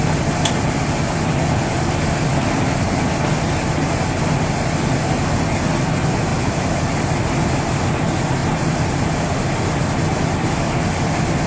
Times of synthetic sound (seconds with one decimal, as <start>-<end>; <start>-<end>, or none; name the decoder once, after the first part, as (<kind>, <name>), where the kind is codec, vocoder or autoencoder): 6.3-6.8 (vocoder, BigVGAN v2); 8.4-9.0